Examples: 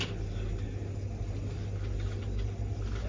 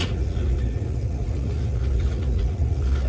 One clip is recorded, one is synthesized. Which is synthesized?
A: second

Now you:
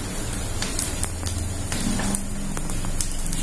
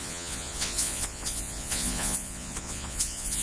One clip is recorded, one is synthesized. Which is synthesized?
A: second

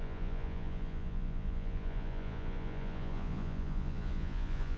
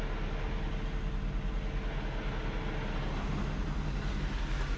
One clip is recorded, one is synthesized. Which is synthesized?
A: first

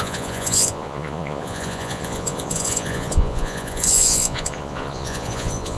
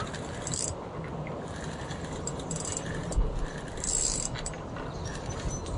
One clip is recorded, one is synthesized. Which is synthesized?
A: first